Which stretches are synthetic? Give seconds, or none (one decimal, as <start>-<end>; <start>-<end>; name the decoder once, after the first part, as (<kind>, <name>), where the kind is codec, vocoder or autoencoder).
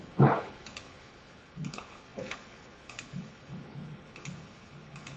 0.0-5.2 (codec, HILCodec)